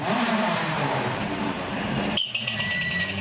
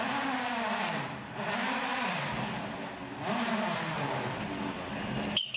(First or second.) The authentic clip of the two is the second